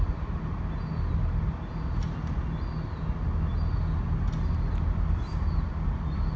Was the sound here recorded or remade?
recorded